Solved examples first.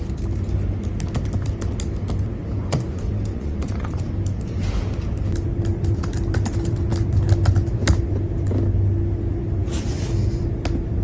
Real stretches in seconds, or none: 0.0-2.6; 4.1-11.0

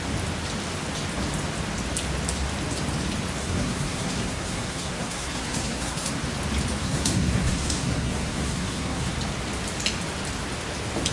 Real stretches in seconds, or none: 0.0-3.4; 6.1-6.8; 9.1-11.1

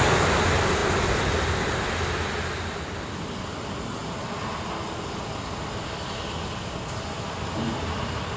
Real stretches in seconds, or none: 0.0-8.4

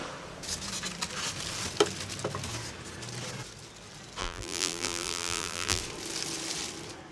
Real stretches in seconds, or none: 0.0-4.2; 5.8-7.1

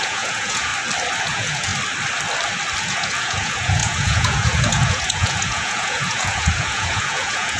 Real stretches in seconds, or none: 0.7-1.2; 1.7-2.8